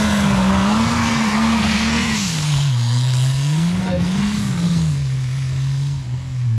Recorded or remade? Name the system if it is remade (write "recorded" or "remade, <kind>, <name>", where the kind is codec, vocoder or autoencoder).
remade, codec, SNAC